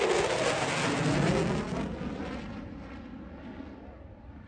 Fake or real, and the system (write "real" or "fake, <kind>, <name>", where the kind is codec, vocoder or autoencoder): real